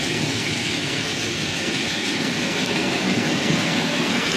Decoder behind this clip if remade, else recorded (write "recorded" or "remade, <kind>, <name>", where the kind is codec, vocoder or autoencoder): remade, codec, SNAC